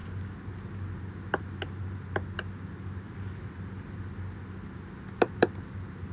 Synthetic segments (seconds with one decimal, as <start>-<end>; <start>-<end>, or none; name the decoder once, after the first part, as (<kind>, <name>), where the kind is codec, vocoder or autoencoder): none